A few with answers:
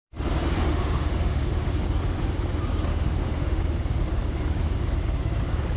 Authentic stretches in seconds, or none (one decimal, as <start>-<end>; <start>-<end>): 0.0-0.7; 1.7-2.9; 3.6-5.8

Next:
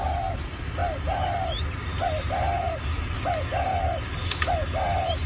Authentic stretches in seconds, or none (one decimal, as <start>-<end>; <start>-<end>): 0.0-5.3

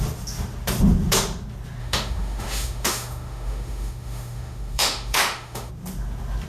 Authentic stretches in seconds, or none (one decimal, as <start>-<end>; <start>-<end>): 0.0-1.8; 5.7-6.5

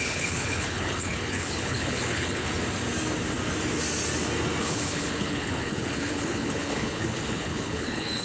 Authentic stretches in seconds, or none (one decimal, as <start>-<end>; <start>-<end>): 2.5-4.6

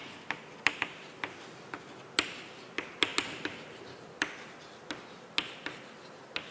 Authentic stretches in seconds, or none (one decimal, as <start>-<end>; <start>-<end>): 0.0-6.5

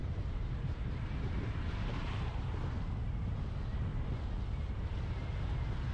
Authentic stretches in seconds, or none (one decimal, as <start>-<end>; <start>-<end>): 2.4-5.9